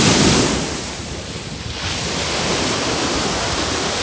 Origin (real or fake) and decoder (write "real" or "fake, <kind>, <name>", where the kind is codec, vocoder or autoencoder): real